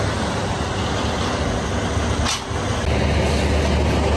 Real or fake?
real